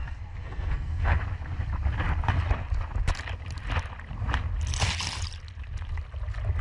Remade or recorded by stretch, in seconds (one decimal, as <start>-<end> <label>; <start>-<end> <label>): 0.0-1.2 remade; 1.2-6.6 recorded